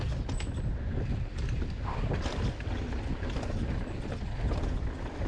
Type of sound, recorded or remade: recorded